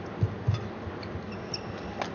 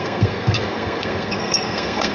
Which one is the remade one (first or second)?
second